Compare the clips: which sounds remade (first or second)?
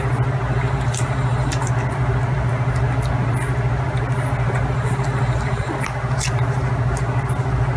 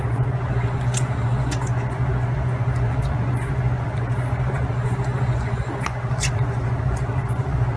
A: second